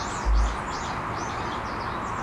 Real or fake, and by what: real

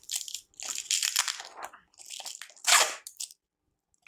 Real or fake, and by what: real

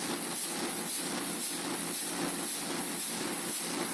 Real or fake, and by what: real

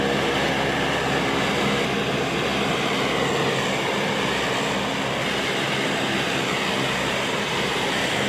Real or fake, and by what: real